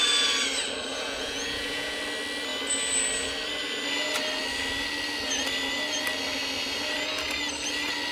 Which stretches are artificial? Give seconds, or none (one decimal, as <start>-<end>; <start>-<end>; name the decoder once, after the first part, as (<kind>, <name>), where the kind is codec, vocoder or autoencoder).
0.9-2.0 (vocoder, Vocos)